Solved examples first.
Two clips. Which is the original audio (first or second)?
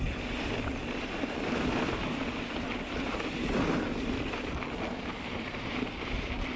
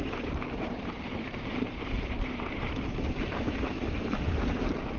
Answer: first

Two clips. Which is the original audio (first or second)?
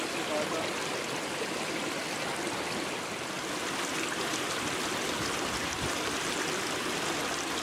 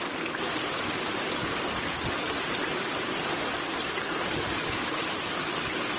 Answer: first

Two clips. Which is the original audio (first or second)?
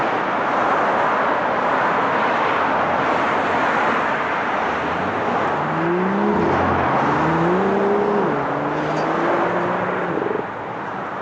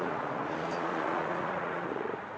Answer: first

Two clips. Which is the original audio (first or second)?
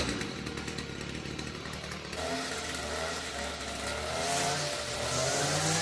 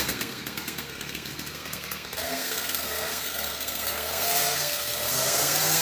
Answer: first